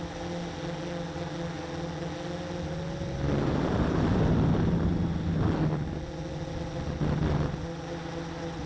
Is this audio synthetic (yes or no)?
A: no